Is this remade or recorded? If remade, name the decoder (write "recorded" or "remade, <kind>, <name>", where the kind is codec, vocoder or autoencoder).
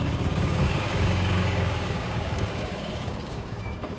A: remade, codec, DAC